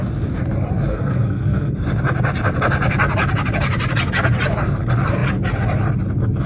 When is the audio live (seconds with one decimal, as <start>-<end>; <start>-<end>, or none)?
0.0-0.9; 1.7-6.5